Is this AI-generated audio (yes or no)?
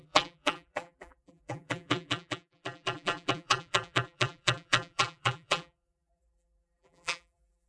yes